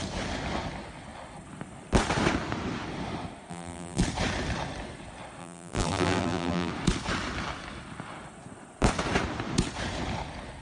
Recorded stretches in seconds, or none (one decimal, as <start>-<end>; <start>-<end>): 0.0-3.5; 4.0-5.4; 6.7-10.6